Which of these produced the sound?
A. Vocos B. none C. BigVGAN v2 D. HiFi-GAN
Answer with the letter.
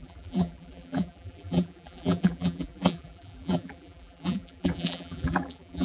C